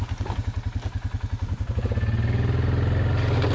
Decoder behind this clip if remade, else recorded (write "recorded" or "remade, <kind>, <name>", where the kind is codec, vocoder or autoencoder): recorded